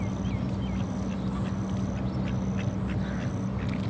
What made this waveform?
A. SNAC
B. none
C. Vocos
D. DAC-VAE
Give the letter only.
B